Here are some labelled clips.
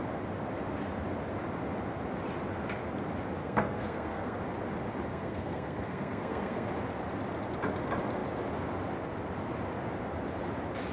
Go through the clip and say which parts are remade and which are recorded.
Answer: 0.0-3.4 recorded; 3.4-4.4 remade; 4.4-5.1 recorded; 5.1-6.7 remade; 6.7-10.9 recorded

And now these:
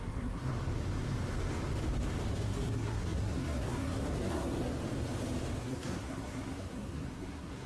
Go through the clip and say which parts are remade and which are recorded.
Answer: 0.0-0.5 remade; 0.5-2.3 recorded; 2.3-4.8 remade; 4.8-5.6 recorded; 5.6-7.7 remade

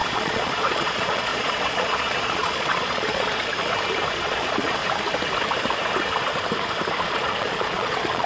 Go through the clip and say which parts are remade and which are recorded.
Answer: 0.0-3.5 remade; 3.5-4.1 recorded; 4.1-4.8 remade; 4.8-7.0 recorded; 7.0-8.3 remade

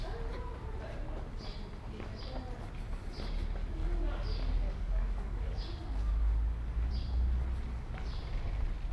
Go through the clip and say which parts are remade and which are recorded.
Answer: 0.0-3.6 recorded; 3.6-6.9 remade; 6.9-8.9 recorded